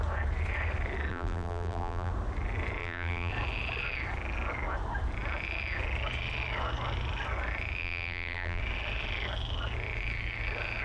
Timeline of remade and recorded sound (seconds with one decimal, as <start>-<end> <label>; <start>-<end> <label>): 0.0-1.1 recorded; 1.1-2.1 remade; 2.1-2.8 recorded; 2.8-3.3 remade; 3.3-7.8 recorded; 7.8-8.6 remade; 8.6-10.8 recorded